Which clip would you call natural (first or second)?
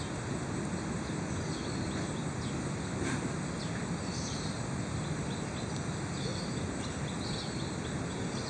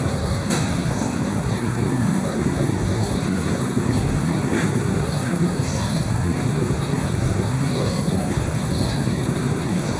first